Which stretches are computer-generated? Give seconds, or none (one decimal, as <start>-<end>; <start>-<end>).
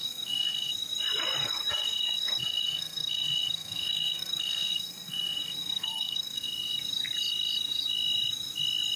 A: 0.0-0.7; 1.4-6.5